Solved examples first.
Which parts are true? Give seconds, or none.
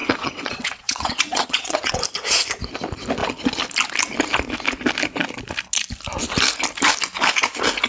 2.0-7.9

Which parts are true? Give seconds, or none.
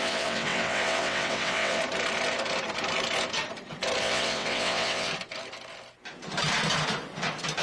1.8-4.0; 5.1-7.6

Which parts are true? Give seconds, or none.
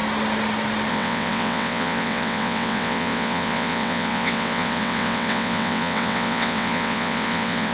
0.0-0.9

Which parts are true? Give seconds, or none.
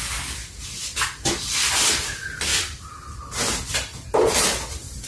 0.0-5.1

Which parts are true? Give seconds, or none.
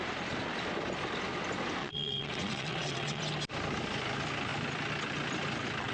0.0-1.8; 3.2-5.9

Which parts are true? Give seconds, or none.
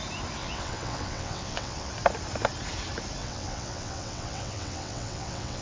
0.0-0.4; 1.9-3.2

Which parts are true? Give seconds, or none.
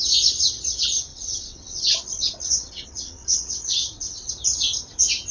0.0-1.1; 4.3-5.3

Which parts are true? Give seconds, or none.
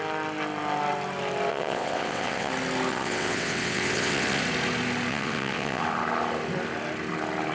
0.0-1.5; 2.5-2.9; 4.4-5.1; 5.8-7.5